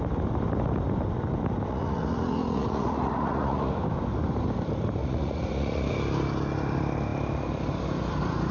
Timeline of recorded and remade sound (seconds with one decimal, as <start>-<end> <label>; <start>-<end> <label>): 0.0-1.7 recorded; 1.7-3.7 remade; 3.7-5.0 recorded; 5.0-5.9 remade; 5.9-8.5 recorded